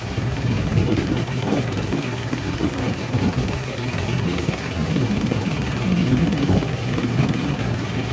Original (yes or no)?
no